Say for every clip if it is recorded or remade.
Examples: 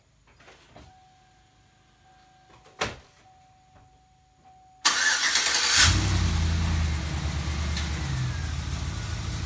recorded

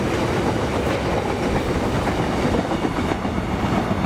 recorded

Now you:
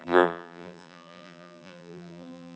remade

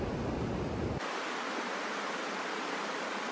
remade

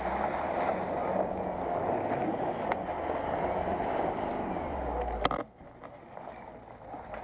recorded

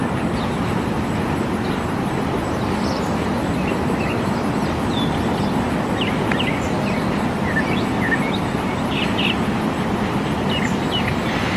recorded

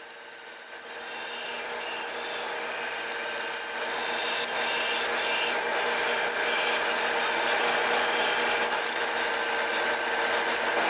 recorded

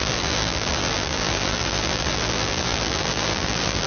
remade